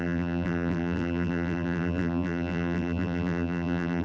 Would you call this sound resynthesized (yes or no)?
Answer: yes